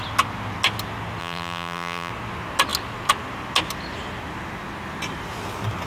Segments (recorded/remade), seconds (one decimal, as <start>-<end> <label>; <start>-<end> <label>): 0.0-1.2 recorded; 1.2-2.1 remade; 2.1-5.9 recorded